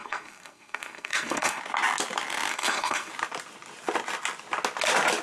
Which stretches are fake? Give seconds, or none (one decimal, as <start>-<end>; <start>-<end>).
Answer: 0.0-1.6; 2.5-3.1